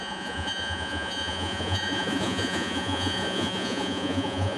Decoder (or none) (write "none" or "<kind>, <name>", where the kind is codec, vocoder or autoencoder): vocoder, Vocos